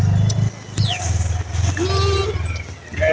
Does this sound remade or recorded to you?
recorded